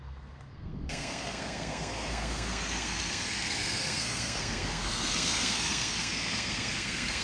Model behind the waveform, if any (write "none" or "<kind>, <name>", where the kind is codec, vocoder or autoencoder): codec, SNAC